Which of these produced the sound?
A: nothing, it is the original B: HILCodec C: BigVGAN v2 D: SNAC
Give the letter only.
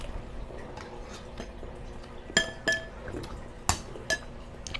A